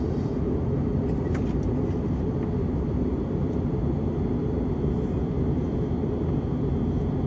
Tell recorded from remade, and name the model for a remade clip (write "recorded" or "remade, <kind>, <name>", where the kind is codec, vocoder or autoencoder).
recorded